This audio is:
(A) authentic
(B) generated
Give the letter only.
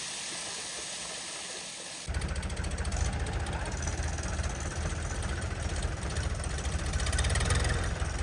A